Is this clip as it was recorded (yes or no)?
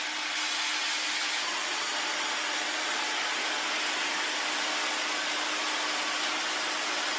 yes